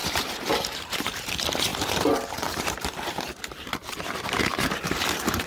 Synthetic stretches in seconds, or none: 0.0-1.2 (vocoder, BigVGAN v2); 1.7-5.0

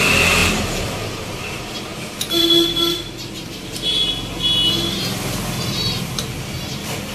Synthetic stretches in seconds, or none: none

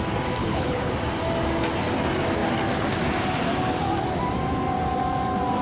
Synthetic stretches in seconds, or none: 0.4-0.9 (codec, HILCodec)